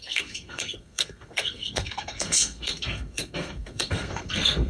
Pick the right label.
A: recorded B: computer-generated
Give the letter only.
B